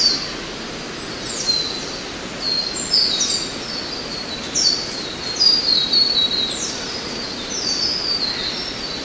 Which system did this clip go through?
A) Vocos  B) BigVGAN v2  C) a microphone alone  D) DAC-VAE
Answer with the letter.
C